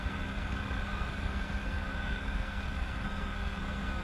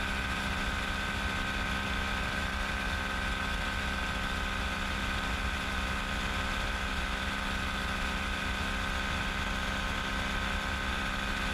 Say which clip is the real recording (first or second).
second